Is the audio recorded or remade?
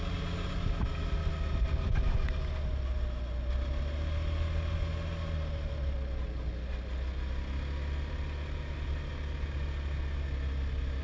recorded